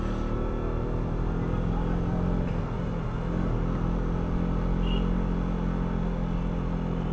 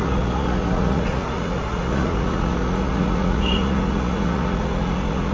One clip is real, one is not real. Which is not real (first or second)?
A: second